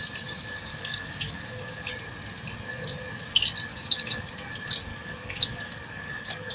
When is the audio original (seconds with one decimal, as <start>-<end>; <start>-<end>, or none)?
0.0-0.7; 1.9-3.7; 4.3-4.9